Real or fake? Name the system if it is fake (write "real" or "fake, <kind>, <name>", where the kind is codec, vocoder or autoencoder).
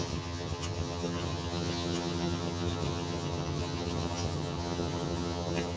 fake, vocoder, HiFi-GAN